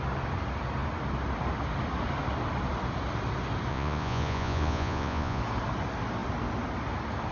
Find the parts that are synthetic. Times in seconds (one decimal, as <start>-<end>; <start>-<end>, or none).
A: 3.7-5.4